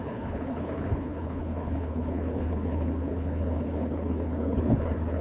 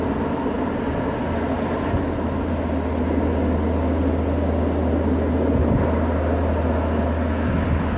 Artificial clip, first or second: first